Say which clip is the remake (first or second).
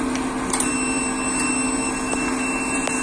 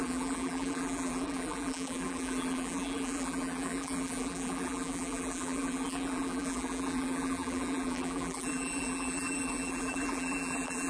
second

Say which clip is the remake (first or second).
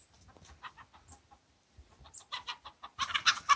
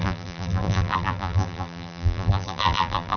second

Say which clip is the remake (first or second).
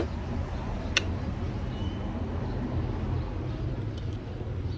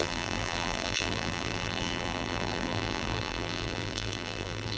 second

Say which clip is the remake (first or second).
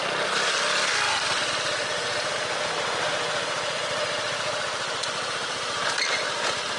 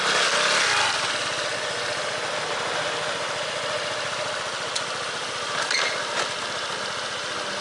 first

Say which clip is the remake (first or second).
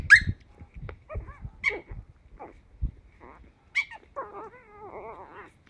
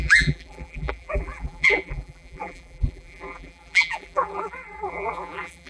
second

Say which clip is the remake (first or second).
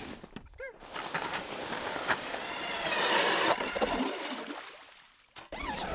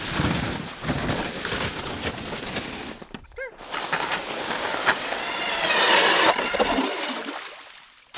first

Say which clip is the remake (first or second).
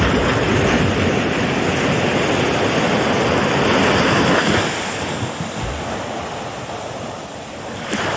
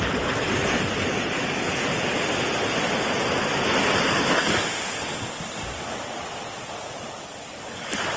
second